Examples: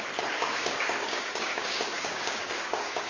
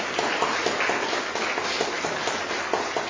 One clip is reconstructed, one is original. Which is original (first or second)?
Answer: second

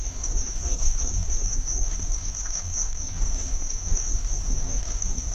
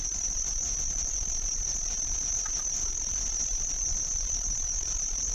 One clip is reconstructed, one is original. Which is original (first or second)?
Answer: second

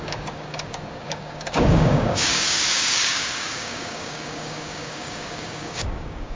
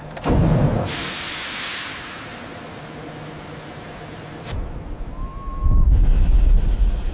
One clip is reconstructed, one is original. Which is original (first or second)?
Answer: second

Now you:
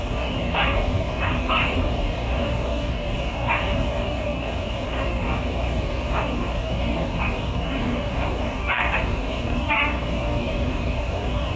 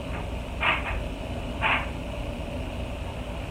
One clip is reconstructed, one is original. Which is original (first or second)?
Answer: second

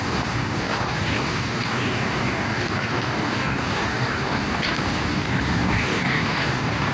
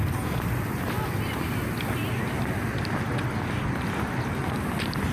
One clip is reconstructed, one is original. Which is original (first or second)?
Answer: second